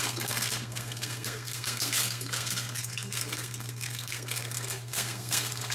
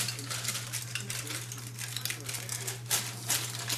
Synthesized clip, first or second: first